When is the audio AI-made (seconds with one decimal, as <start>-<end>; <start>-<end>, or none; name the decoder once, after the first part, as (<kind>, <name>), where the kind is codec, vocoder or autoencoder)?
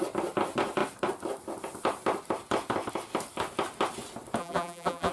4.4-5.1 (vocoder, BigVGAN v2)